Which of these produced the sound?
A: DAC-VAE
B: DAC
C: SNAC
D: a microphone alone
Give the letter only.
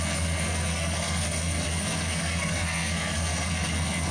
C